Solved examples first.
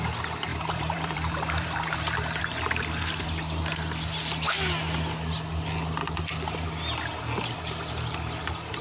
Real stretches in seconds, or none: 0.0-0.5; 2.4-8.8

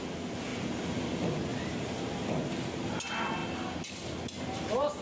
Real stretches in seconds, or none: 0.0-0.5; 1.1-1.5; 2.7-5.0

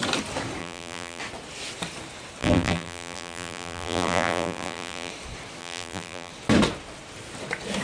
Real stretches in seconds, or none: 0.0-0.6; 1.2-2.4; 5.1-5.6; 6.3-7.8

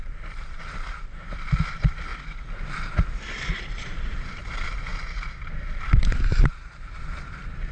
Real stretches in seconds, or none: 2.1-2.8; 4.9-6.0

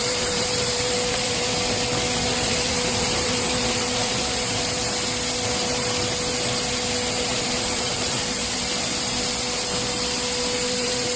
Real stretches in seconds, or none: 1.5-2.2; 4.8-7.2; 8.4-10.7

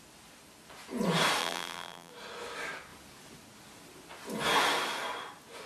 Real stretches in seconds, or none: 0.0-1.4; 2.1-5.7

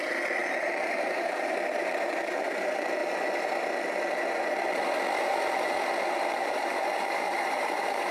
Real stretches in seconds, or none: 3.0-6.3

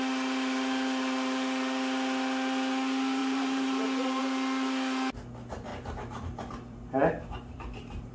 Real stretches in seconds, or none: 0.0-3.2; 4.2-5.7